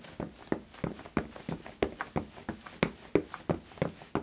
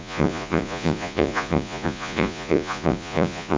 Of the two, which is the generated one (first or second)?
second